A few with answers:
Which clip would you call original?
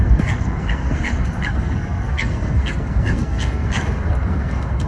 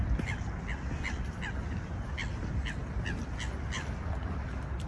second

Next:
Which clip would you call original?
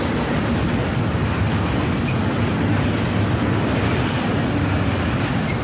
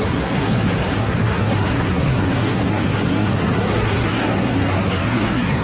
first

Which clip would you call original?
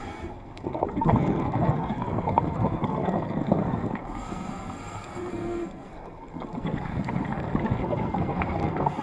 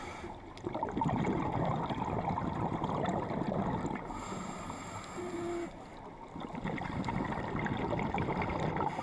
second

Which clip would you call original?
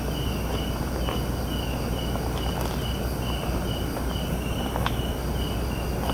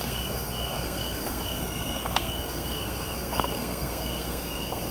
first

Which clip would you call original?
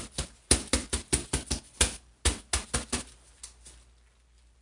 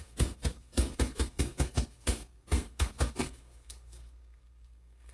first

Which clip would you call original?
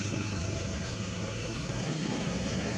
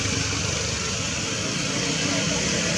second